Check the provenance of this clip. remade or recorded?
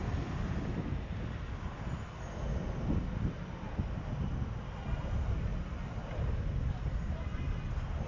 recorded